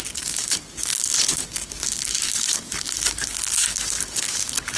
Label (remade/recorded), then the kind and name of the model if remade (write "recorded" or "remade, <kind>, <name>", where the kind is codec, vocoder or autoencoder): remade, codec, DAC